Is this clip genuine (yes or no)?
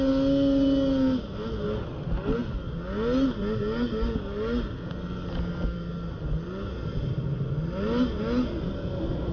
yes